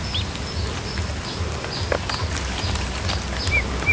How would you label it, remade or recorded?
recorded